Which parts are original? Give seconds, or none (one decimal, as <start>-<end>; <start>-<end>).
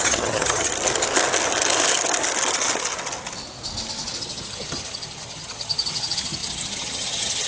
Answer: 0.7-4.2